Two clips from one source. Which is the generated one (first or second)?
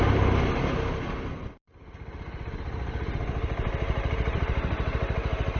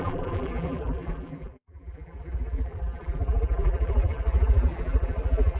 second